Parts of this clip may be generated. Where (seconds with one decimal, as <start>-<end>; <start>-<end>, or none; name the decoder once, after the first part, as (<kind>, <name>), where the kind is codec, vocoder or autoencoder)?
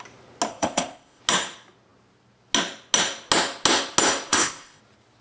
0.5-1.2 (codec, ZipCodec); 4.3-4.8